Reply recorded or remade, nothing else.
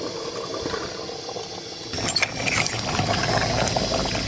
recorded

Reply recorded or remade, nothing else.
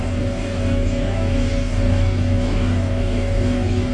remade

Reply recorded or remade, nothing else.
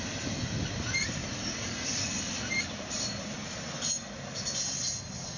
recorded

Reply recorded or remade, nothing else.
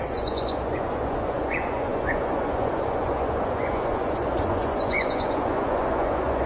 remade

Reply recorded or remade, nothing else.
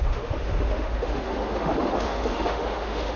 remade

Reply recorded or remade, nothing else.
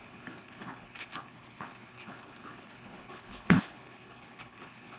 remade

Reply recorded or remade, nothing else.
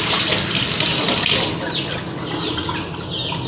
recorded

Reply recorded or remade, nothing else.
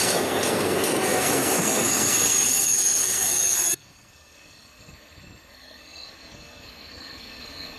remade